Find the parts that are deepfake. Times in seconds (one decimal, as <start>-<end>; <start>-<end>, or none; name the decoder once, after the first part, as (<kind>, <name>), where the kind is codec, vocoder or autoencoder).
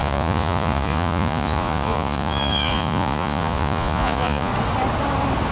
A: 0.0-4.5 (vocoder, Vocos)